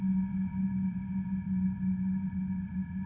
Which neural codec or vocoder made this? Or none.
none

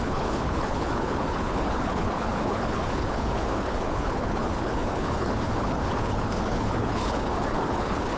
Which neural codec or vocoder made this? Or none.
codec, HILCodec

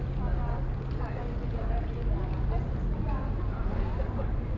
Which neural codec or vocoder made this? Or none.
none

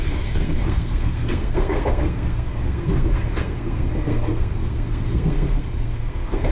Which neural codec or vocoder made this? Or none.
codec, SNAC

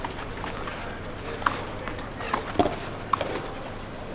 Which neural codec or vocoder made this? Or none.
none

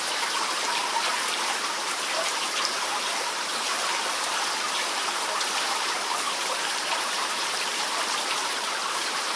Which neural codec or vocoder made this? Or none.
vocoder, BigVGAN v2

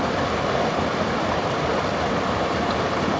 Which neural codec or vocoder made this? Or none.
none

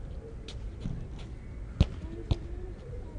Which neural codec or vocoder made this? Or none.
none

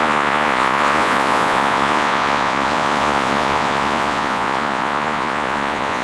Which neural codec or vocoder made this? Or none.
vocoder, Vocos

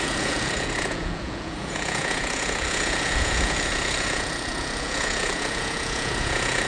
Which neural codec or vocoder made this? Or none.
vocoder, Vocos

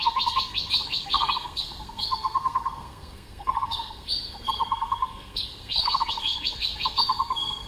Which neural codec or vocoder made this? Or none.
codec, SNAC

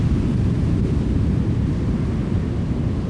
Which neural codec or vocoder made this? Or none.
none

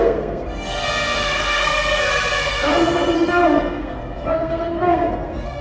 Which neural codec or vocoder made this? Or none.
codec, SNAC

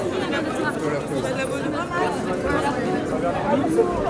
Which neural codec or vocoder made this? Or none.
none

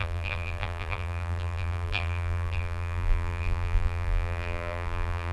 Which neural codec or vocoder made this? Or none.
vocoder, BigVGAN v2